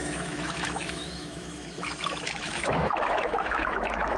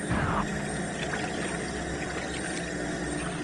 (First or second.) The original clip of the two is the second